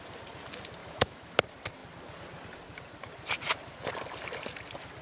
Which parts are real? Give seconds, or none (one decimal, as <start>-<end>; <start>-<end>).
0.0-0.8; 1.3-5.0